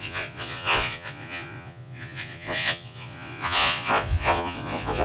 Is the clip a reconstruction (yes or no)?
yes